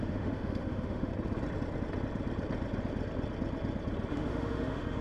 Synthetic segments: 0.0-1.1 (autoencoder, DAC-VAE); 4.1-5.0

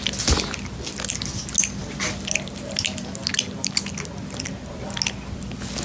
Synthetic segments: none